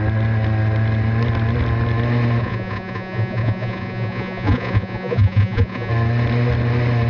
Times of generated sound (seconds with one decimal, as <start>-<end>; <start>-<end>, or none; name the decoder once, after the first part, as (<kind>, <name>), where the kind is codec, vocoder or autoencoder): 2.4-5.9 (vocoder, Vocos)